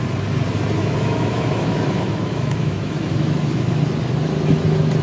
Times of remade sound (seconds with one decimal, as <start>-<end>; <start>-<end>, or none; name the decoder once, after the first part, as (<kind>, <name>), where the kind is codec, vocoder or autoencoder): 0.8-3.8 (autoencoder, DAC-VAE)